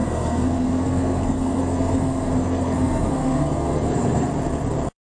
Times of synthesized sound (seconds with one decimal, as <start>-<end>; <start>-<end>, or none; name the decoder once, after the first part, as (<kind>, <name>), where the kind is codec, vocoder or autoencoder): 0.0-4.3 (codec, SNAC)